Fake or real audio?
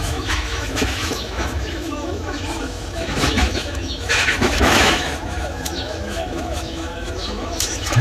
fake